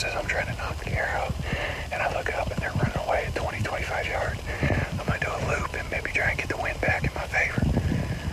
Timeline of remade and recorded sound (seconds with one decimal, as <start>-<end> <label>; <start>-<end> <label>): 0.0-1.1 recorded; 1.1-2.9 remade; 2.9-4.1 recorded; 4.1-7.5 remade; 7.5-8.3 recorded